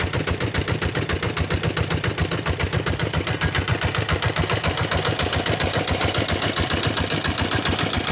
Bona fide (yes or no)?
yes